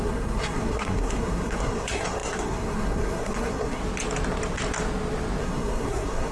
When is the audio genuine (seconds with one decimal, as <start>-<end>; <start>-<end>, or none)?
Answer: 3.8-5.4